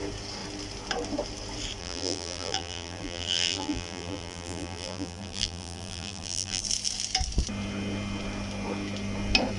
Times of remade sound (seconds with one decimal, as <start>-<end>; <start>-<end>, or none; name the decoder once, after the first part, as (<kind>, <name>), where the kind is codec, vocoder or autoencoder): 1.8-6.6 (vocoder, BigVGAN v2)